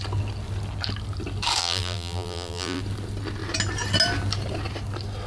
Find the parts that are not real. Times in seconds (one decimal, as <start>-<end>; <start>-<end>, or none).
1.6-2.8